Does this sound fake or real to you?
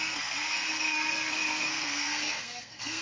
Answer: fake